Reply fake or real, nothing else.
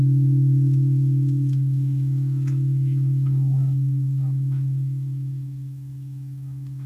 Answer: fake